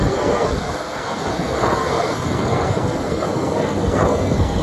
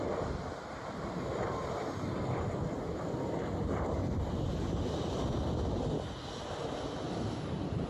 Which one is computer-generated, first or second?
first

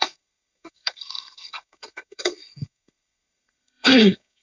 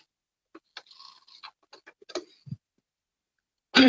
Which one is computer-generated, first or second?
first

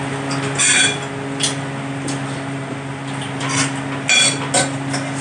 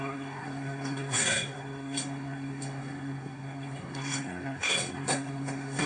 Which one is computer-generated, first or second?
second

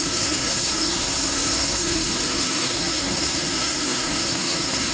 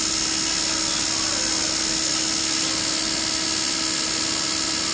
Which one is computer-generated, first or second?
first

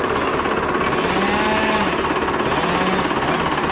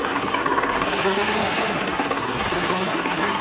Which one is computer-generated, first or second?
second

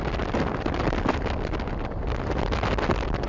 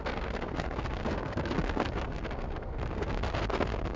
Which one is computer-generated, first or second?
second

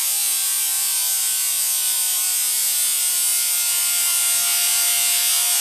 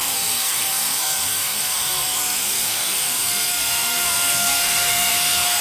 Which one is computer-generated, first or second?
second